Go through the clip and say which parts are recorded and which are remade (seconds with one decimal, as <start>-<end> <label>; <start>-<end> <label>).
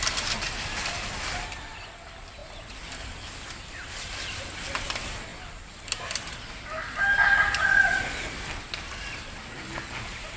0.0-10.4 recorded